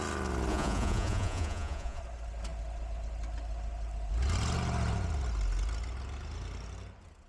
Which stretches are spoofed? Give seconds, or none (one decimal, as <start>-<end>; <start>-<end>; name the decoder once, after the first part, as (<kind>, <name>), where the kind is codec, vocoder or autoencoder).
0.5-2.0 (vocoder, Vocos)